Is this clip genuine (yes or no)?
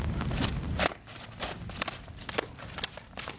yes